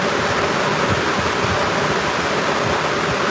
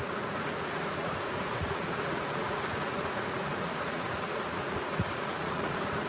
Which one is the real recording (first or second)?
first